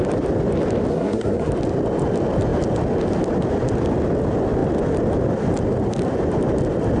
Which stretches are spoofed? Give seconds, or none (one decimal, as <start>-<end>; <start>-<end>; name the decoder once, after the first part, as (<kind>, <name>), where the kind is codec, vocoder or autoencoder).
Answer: 0.9-1.5 (codec, SNAC)